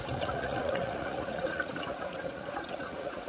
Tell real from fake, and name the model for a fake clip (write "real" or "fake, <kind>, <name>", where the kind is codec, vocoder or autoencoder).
fake, vocoder, Vocos